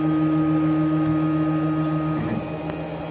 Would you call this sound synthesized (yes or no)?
no